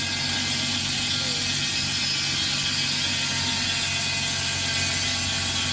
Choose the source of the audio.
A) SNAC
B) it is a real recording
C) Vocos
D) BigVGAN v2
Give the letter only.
B